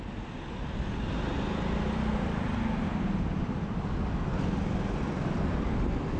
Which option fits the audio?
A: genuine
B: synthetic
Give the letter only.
A